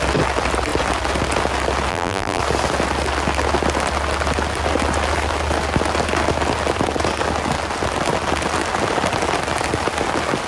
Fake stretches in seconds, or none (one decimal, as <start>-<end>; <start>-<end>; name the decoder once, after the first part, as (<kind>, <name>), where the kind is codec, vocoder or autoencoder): 1.9-2.4 (vocoder, BigVGAN v2)